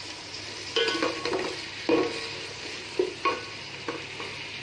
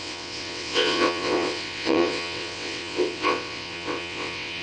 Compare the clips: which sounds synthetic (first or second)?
second